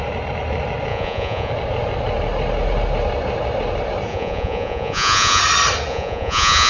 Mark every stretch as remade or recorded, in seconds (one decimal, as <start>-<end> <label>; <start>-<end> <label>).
0.0-0.9 recorded; 0.9-1.5 remade; 1.5-4.1 recorded; 4.1-5.4 remade; 5.4-5.9 recorded; 5.9-6.7 remade